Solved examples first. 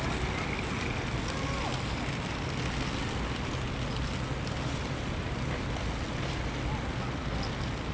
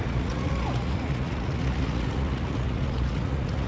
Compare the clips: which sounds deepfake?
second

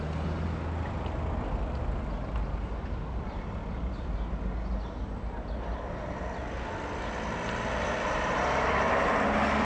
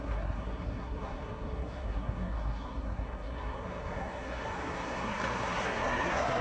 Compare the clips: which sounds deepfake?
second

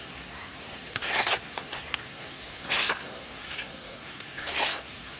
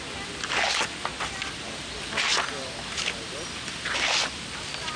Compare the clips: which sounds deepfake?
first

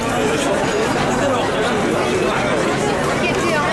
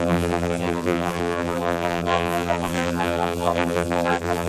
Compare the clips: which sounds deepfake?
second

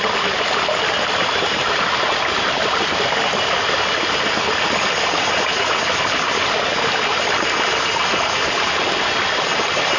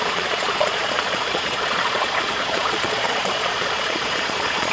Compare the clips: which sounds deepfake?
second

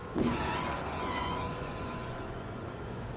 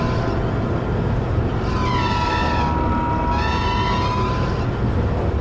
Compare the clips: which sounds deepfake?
first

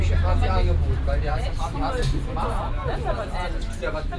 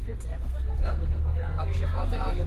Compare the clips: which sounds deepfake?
second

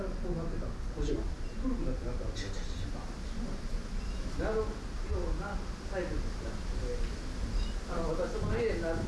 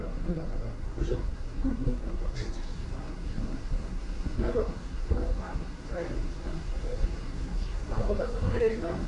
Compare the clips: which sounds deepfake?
second